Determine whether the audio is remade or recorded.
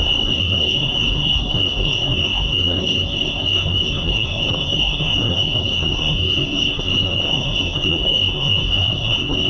remade